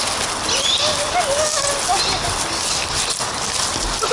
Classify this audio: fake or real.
real